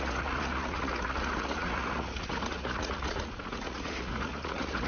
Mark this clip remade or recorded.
remade